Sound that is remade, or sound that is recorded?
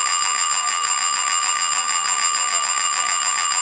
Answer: remade